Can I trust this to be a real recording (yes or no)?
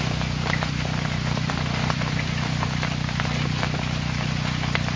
no